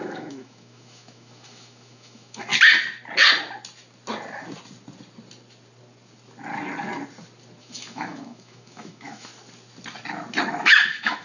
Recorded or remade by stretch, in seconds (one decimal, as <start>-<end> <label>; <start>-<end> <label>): 0.0-2.5 remade; 2.5-7.6 recorded; 7.6-9.3 remade; 9.3-10.5 recorded; 10.5-11.2 remade